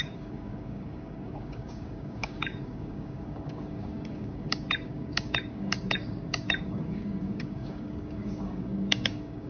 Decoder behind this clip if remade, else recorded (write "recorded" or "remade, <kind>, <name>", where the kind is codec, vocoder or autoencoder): remade, codec, DAC